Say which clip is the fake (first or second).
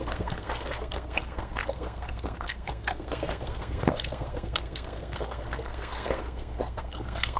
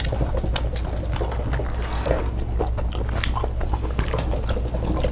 first